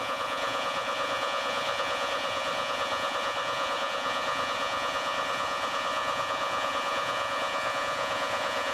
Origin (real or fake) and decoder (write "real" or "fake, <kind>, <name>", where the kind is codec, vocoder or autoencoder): fake, vocoder, Vocos